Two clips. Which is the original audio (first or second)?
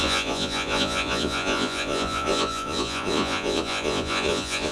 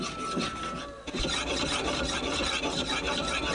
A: second